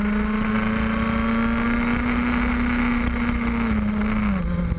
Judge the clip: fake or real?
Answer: real